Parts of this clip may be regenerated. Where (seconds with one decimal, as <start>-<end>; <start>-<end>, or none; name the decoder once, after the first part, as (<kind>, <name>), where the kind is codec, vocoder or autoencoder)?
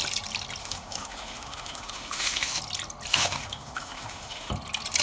0.6-2.6 (autoencoder, DAC-VAE); 3.1-4.5